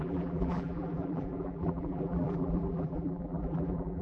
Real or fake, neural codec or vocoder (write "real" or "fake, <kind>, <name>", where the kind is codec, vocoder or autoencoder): fake, vocoder, BigVGAN v2